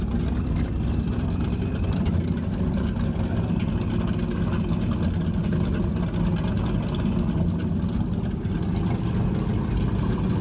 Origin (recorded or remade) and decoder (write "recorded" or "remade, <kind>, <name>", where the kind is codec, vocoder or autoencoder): recorded